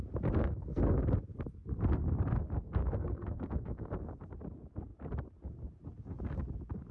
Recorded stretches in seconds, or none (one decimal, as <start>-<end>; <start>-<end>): 0.0-0.4; 1.0-2.8; 3.9-6.9